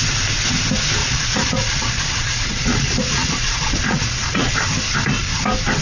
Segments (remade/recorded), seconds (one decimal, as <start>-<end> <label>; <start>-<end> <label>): 0.0-1.0 recorded; 1.0-4.5 remade; 4.5-5.8 recorded